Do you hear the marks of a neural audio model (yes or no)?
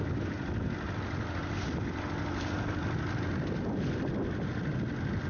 no